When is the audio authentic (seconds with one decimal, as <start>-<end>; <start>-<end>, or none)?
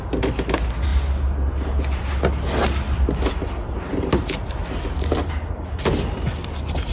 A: 0.0-6.9